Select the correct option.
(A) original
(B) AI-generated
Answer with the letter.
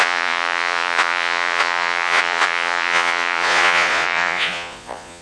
B